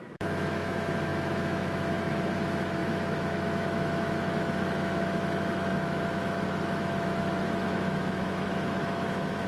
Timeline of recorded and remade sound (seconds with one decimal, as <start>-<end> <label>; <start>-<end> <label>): 0.0-9.5 remade